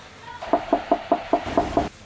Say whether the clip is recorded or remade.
remade